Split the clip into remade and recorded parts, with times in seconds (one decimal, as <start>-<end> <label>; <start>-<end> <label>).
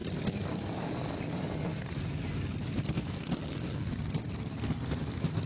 0.0-5.5 recorded